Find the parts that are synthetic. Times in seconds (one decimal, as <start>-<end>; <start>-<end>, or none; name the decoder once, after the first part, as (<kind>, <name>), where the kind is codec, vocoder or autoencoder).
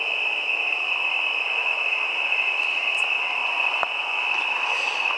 3.4-4.2 (vocoder, Vocos)